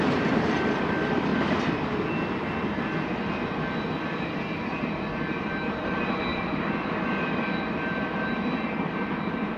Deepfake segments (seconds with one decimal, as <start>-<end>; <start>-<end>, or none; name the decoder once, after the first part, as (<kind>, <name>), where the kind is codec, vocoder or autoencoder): 0.0-1.3 (vocoder, BigVGAN v2); 4.0-9.6